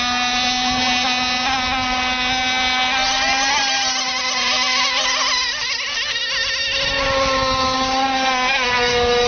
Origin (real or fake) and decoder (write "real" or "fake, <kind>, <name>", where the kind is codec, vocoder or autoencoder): real